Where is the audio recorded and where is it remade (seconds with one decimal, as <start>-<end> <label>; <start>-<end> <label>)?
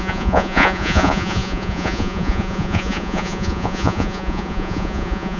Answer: 0.0-5.4 remade